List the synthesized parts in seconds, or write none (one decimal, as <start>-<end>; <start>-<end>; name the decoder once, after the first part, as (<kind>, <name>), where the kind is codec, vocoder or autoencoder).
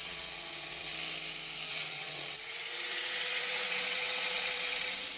0.0-0.9 (vocoder, WaveNeXt); 1.7-5.2